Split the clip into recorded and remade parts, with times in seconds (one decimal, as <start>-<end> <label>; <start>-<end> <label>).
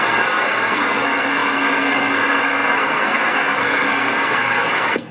0.0-5.1 remade